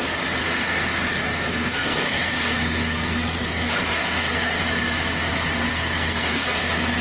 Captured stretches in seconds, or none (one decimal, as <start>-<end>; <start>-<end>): 0.0-0.4; 4.6-5.7; 6.6-7.0